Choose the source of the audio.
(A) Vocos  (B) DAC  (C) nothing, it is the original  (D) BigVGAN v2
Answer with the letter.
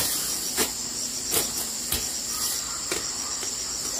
C